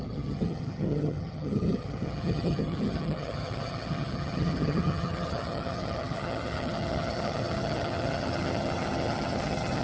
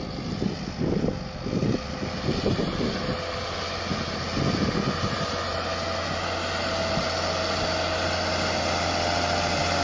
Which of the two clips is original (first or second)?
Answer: second